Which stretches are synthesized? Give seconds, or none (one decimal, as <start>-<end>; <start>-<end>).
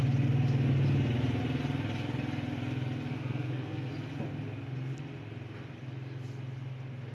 3.1-3.9